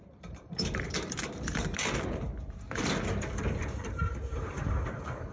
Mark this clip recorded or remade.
remade